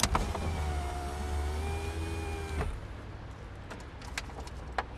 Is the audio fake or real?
real